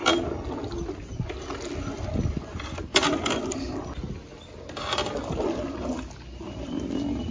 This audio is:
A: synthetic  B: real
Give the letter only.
B